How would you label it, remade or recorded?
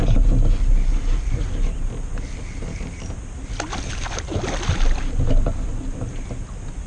recorded